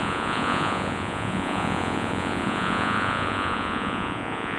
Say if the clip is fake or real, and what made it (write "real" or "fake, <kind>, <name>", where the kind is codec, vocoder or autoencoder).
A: fake, vocoder, Vocos